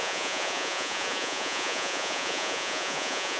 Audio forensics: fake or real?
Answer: fake